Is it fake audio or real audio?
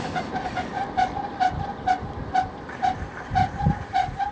real